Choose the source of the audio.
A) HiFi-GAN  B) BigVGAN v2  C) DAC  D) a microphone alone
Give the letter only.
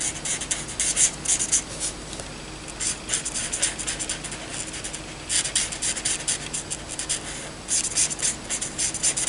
D